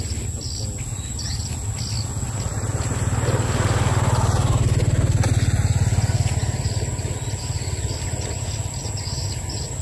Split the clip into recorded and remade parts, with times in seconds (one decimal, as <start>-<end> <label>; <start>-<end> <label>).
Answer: 0.0-9.8 recorded